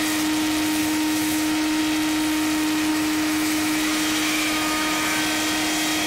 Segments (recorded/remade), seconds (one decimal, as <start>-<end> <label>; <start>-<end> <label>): 0.0-0.8 recorded; 0.8-1.8 remade; 1.8-2.9 recorded; 2.9-5.2 remade; 5.2-6.1 recorded